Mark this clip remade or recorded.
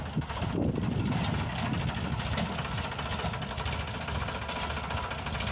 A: recorded